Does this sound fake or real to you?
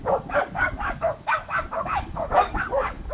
fake